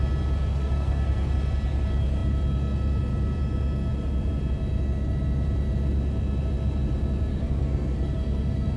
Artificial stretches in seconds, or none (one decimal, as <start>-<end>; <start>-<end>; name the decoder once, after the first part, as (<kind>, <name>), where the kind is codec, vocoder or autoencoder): 0.5-1.3 (codec, SNAC); 7.3-8.8